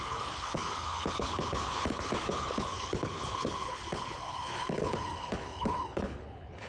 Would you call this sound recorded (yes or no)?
no